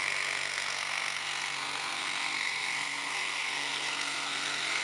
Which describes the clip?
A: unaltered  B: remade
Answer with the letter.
B